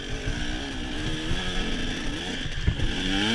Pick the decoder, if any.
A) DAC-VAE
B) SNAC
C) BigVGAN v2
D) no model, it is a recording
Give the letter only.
D